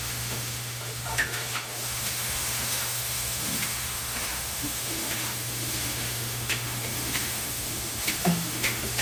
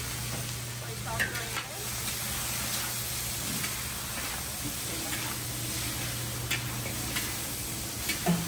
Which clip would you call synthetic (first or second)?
first